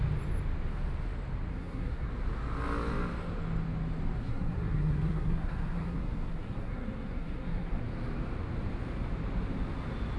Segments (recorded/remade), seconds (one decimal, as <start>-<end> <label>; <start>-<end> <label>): 0.0-1.5 recorded; 1.5-2.1 remade; 2.1-4.2 recorded; 4.2-7.8 remade; 7.8-10.2 recorded